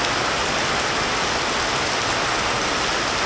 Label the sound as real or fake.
real